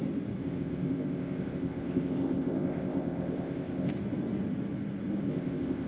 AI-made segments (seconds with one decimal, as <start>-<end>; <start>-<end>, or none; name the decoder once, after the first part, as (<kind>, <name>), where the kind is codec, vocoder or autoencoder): 0.4-3.9 (codec, ZipCodec); 5.3-5.9